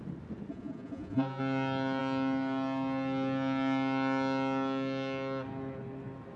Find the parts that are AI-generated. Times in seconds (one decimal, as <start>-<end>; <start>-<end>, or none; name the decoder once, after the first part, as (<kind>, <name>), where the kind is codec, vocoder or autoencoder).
0.5-1.4 (vocoder, Vocos)

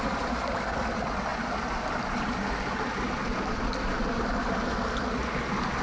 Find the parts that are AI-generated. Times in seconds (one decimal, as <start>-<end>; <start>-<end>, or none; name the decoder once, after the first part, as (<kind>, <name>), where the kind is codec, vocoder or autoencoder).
none

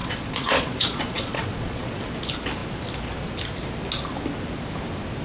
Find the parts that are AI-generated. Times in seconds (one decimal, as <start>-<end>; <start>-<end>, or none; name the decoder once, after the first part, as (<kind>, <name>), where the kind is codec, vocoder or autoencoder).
0.0-2.0 (vocoder, Vocos)

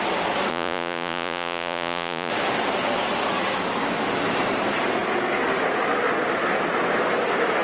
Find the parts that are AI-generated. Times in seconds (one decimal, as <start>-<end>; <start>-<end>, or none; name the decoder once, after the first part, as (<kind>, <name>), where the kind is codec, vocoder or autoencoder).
0.5-2.3 (vocoder, Vocos)

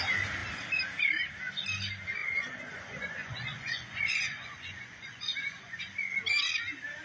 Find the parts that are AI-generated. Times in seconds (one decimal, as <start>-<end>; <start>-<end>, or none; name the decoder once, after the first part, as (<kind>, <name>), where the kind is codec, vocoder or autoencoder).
2.2-5.8 (vocoder, Vocos)